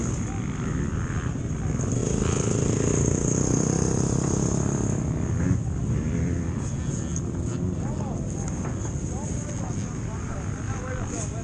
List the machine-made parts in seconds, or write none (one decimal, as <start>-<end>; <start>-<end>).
none